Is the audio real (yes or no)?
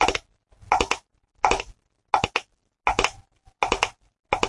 yes